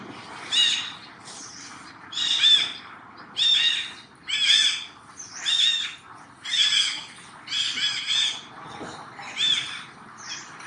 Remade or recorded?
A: recorded